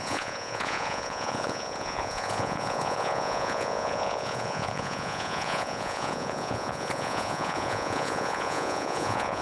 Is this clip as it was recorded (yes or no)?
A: no